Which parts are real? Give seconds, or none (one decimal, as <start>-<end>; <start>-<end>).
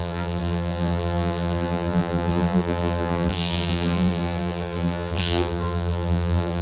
none